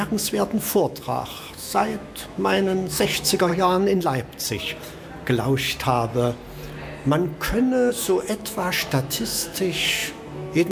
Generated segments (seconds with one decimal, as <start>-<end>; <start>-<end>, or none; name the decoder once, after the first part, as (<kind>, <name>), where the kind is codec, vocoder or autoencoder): 0.0-3.5 (autoencoder, DAC-VAE); 7.9-10.7